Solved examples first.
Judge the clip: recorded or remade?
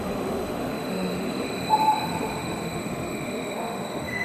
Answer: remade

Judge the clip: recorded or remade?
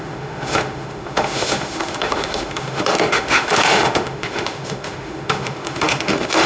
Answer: remade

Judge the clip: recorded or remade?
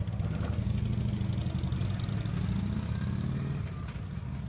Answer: recorded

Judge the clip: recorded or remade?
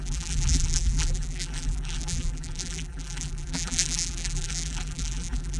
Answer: remade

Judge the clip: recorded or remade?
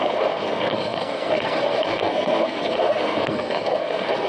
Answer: remade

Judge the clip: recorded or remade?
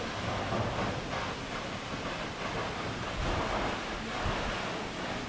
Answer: recorded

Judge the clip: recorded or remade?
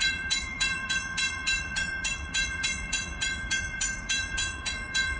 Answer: remade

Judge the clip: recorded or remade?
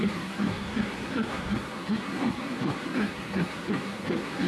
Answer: remade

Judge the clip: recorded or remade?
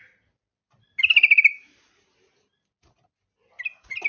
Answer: recorded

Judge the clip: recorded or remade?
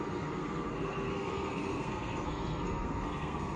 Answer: remade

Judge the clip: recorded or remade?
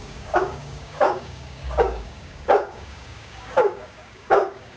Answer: remade